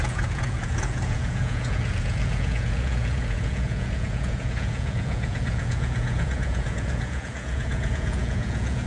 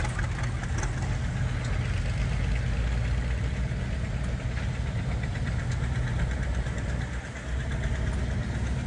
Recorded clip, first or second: second